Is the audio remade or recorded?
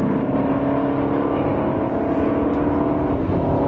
recorded